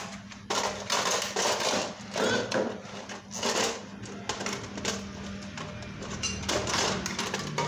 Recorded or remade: recorded